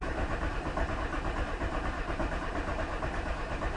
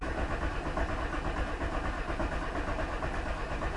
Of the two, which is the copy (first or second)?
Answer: first